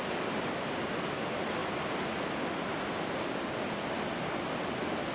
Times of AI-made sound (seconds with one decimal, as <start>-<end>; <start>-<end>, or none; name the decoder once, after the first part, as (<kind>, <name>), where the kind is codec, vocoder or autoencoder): none